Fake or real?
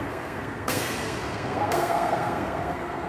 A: fake